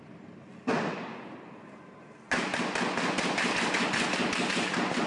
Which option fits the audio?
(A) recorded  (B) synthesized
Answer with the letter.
A